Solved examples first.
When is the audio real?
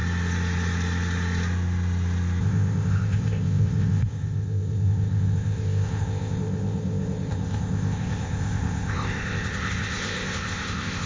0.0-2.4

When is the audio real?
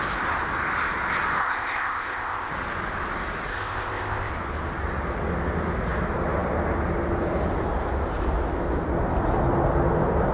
0.0-1.4; 2.5-3.5; 4.3-10.3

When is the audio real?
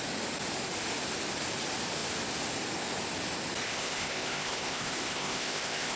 0.0-3.6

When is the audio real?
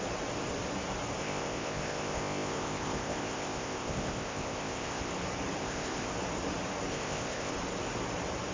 0.0-1.2; 5.1-5.6; 6.1-6.9; 7.5-8.5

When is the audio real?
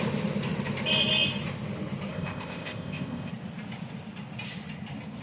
0.0-2.1; 3.3-5.2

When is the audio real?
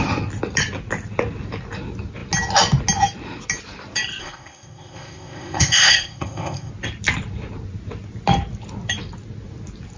0.0-4.2; 6.7-10.0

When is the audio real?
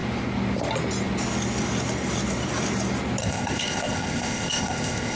0.0-3.2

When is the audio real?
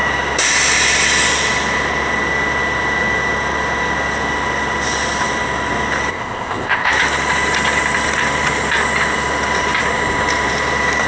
0.0-6.1; 6.9-11.1